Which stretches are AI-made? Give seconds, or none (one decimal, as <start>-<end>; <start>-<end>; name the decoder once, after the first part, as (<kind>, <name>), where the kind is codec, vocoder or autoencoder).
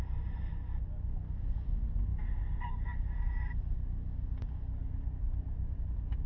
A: none